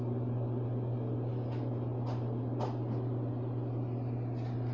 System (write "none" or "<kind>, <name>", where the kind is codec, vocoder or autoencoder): none